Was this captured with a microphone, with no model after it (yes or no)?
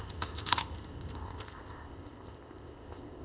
no